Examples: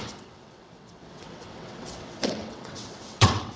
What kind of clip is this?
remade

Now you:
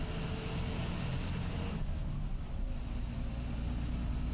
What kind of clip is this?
recorded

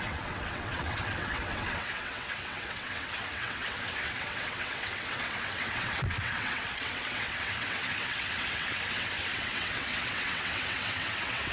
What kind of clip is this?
remade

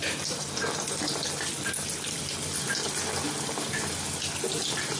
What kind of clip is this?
recorded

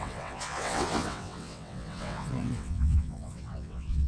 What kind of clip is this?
remade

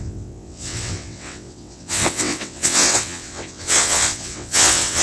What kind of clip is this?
remade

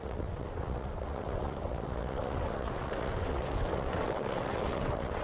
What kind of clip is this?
remade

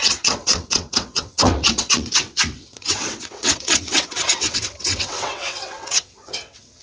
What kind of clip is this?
remade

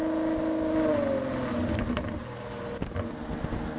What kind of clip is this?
recorded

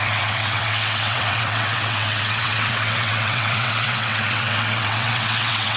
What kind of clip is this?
remade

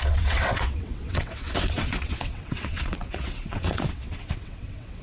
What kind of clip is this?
remade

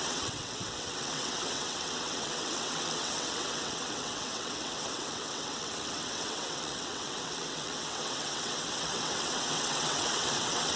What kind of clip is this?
remade